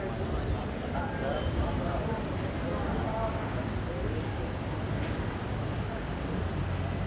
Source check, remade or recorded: recorded